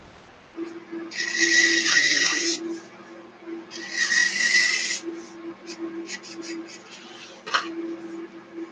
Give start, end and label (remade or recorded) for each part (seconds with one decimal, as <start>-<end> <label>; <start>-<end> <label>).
0.0-1.9 recorded; 1.9-2.6 remade; 2.6-8.7 recorded